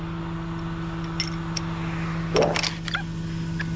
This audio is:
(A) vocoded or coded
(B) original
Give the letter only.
B